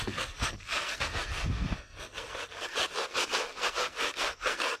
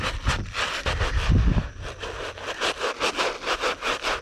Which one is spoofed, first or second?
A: first